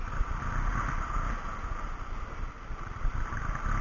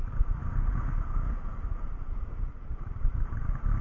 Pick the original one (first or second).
first